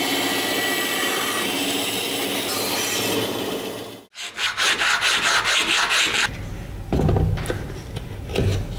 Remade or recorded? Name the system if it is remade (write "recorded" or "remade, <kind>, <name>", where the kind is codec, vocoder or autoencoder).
recorded